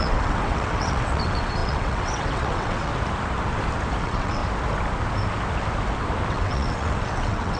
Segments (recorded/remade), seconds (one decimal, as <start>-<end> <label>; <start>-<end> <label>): 0.0-2.9 remade; 2.9-4.0 recorded; 4.0-4.4 remade; 4.4-6.3 recorded; 6.3-7.6 remade